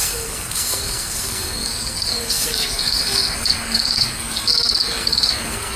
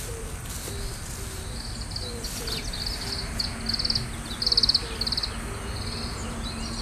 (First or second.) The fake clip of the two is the first